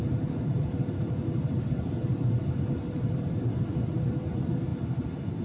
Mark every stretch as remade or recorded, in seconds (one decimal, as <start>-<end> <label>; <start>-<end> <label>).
0.0-5.4 remade